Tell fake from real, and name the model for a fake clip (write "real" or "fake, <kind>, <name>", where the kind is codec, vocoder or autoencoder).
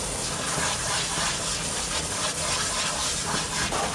real